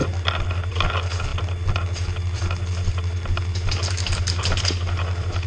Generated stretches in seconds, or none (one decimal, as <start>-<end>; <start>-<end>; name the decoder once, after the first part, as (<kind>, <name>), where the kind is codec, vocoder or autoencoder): none